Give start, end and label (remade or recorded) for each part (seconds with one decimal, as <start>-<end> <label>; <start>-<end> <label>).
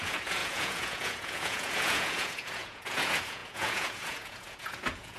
0.0-5.2 remade